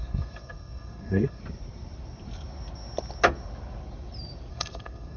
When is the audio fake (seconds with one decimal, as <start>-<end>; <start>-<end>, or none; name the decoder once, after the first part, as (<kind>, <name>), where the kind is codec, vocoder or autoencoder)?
0.0-1.4 (codec, SNAC); 4.5-5.2